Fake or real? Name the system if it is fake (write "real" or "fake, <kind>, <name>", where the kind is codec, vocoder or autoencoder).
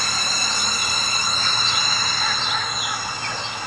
real